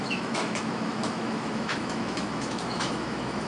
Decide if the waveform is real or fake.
fake